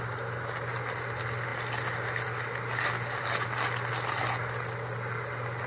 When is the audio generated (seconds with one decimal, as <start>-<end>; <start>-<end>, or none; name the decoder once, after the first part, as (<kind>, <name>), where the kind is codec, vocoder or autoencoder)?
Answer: none